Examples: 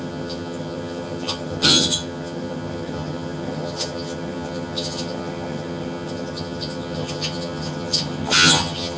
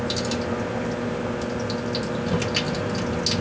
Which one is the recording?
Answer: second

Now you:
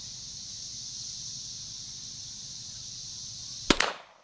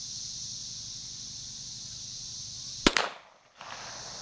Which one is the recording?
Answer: second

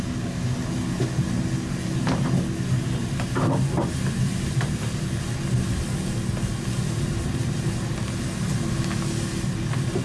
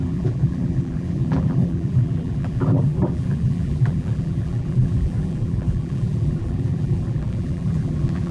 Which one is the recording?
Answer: first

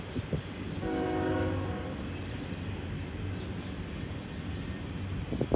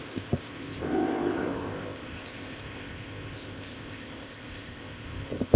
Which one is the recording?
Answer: first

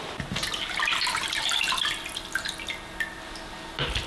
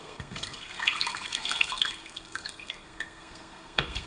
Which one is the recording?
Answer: first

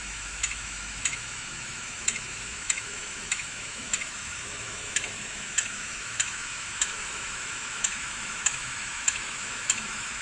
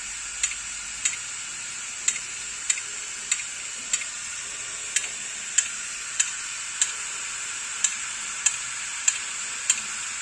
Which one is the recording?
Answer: second